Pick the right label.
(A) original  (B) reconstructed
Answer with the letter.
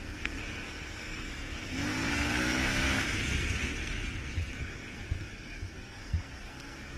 B